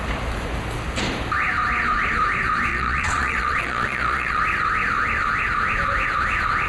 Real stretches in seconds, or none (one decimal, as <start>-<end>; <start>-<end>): 0.0-2.7; 4.4-6.7